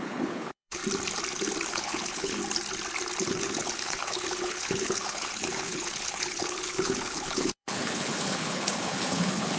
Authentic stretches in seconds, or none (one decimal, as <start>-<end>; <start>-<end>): 0.8-1.7; 2.4-3.2